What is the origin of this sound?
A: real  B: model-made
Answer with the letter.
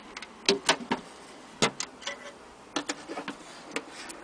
A